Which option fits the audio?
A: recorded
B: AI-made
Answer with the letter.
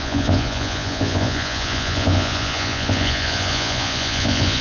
B